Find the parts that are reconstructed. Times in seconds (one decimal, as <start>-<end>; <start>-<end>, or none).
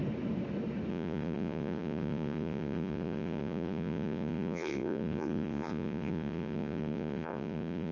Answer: 0.9-7.9